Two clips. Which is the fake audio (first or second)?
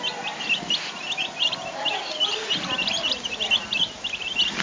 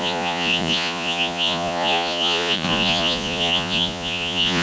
second